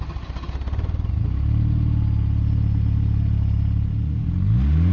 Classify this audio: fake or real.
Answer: real